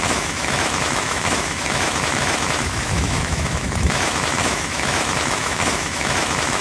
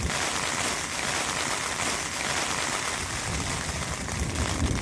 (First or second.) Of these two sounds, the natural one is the second